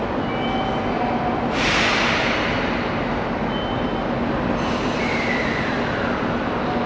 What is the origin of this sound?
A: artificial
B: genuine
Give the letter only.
B